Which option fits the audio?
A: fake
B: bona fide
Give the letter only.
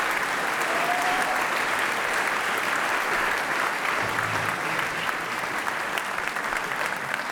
A